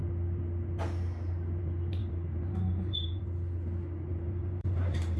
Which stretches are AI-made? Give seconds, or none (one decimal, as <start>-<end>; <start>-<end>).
2.0-3.2; 4.1-5.2